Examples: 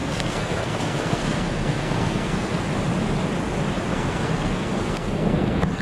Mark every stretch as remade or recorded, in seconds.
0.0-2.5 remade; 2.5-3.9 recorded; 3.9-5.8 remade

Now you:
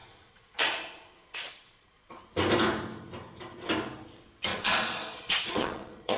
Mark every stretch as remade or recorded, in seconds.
0.0-2.2 remade; 2.2-4.5 recorded; 4.5-6.2 remade

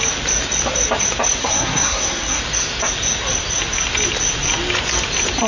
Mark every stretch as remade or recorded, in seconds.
0.0-1.4 recorded; 1.4-2.4 remade; 2.4-5.5 recorded

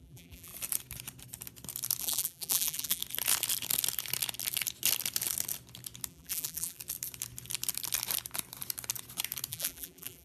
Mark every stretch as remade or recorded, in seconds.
0.0-0.5 remade; 0.5-2.0 recorded; 2.0-3.0 remade; 3.0-6.1 recorded; 6.1-6.8 remade; 6.8-9.5 recorded; 9.5-10.2 remade

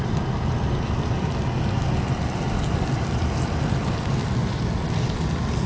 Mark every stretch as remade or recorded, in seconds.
0.0-5.7 recorded

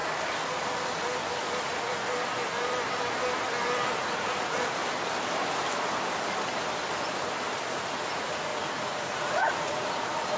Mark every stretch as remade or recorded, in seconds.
0.0-4.0 recorded; 4.0-4.8 remade; 4.8-7.7 recorded; 7.7-10.4 remade